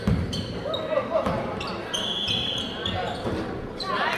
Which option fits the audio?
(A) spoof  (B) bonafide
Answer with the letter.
B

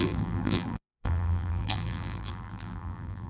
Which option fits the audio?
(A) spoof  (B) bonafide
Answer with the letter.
A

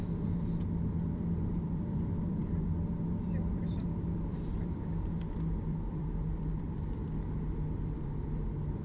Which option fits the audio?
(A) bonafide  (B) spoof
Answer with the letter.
B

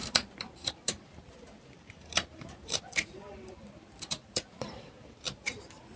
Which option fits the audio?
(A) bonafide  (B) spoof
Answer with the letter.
B